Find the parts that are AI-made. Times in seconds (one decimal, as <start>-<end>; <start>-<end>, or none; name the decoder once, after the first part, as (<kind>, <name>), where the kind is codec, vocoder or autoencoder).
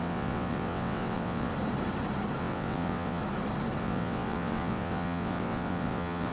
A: 0.0-1.5 (vocoder, WaveNeXt); 2.4-3.2; 3.8-6.3